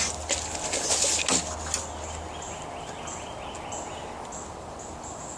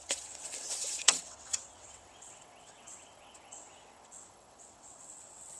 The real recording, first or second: first